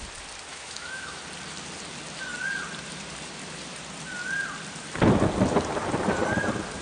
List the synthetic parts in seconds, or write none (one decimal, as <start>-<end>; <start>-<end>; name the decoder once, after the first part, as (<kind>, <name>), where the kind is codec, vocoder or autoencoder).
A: 0.5-1.2 (autoencoder, DAC-VAE)

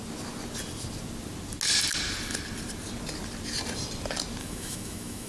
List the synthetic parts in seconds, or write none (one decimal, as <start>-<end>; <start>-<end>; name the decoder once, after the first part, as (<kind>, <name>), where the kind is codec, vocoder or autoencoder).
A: 4.4-5.3 (autoencoder, DAC-VAE)

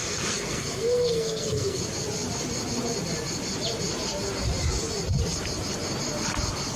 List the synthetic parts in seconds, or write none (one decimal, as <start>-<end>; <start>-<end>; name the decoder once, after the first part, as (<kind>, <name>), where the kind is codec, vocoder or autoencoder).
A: 0.0-1.8 (codec, SNAC)

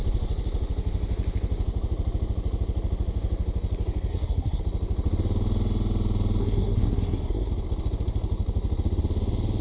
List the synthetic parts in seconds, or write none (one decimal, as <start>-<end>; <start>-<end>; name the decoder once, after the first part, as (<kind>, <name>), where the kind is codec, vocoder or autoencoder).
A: 4.1-4.6 (codec, SNAC); 6.4-7.5